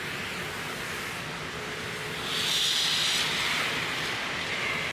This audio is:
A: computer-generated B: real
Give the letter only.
B